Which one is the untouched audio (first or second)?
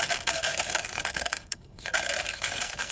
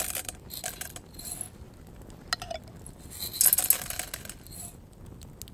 second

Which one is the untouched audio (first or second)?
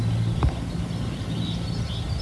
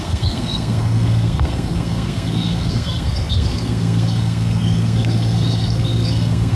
first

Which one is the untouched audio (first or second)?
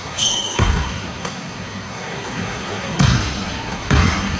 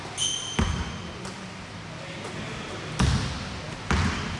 second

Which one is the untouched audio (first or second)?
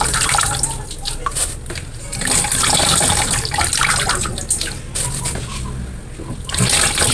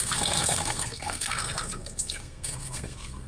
first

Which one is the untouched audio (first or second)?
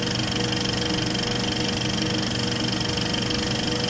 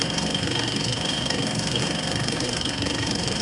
first